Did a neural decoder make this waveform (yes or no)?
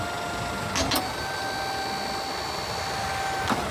no